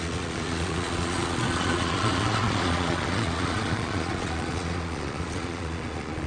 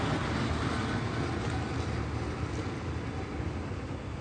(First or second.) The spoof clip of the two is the first